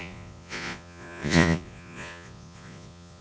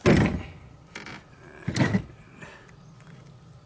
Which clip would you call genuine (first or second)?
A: second